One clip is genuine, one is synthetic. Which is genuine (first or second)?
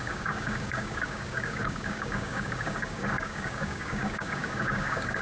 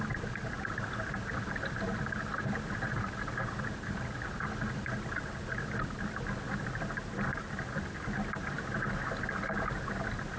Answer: second